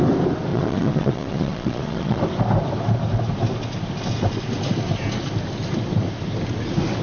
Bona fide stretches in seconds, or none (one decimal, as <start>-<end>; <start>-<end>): 0.0-0.5; 2.2-7.0